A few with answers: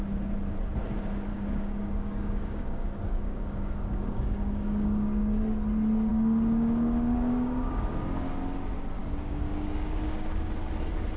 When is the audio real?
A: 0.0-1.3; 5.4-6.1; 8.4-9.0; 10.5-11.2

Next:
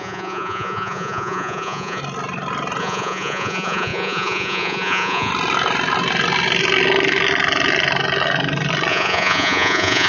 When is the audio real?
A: 2.0-2.8; 5.3-8.9

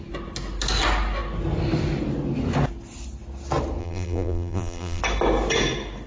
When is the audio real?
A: 0.0-3.8; 5.0-6.1

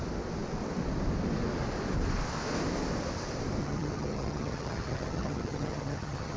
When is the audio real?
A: 0.0-3.6

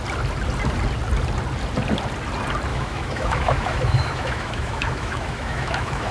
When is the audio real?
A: 0.0-2.7

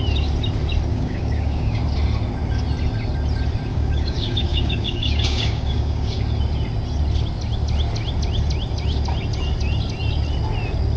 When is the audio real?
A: 0.0-0.9; 1.8-3.7; 6.2-11.0